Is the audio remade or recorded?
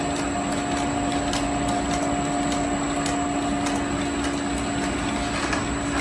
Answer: recorded